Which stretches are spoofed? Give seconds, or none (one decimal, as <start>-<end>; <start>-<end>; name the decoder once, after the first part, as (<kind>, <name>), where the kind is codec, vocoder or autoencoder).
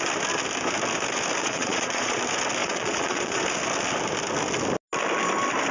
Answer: 1.4-2.2 (vocoder, Vocos); 2.6-3.4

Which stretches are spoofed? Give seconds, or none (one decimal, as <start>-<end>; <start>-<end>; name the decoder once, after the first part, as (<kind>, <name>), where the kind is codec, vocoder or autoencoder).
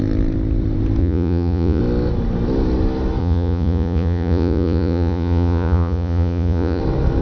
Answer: 1.0-1.8 (vocoder, Vocos); 3.2-6.8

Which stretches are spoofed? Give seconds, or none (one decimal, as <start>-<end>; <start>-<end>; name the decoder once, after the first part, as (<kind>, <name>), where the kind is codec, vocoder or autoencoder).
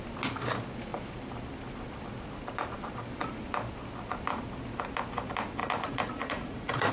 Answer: 5.6-6.9 (vocoder, Vocos)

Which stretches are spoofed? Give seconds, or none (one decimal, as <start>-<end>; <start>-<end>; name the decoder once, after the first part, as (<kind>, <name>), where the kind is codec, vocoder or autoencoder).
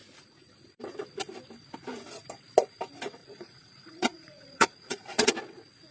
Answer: 3.2-5.3 (vocoder, Vocos)